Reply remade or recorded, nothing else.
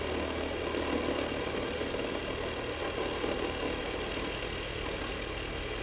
recorded